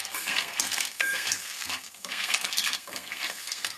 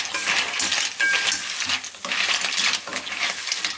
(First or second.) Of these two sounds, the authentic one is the second